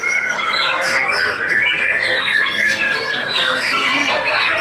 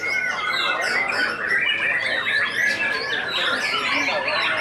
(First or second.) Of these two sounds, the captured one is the second